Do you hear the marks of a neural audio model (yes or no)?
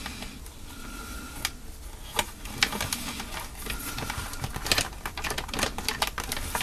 no